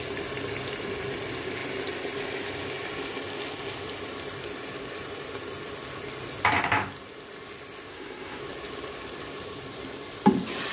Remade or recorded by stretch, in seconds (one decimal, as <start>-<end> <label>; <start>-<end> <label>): 0.0-7.9 recorded; 7.9-8.4 remade; 8.4-10.7 recorded